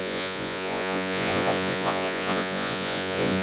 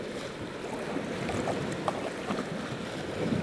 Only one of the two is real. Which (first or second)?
second